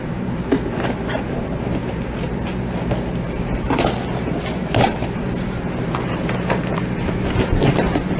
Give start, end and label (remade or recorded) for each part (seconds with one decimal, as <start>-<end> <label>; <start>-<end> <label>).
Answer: 0.0-8.2 recorded